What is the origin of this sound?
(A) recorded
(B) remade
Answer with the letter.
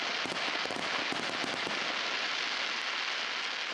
A